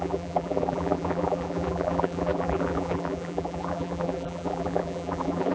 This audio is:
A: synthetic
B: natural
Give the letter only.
A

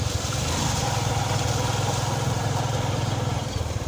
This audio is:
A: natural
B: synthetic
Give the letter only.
B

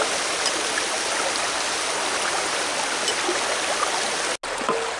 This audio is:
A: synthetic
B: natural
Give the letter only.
B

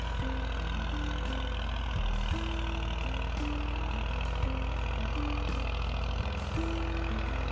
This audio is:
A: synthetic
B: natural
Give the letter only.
B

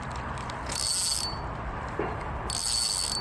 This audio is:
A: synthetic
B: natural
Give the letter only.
B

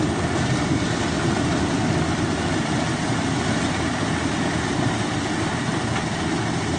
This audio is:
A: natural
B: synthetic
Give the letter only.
A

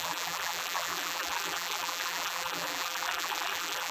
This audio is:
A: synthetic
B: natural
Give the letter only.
A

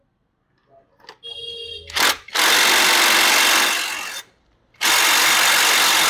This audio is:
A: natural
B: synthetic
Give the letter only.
A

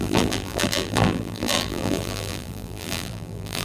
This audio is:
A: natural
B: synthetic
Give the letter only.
B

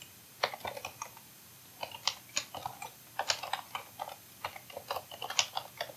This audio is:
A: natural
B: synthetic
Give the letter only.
A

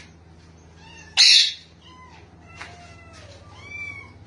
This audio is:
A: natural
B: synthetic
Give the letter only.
A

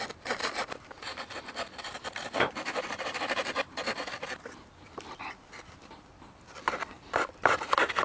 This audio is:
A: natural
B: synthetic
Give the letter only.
B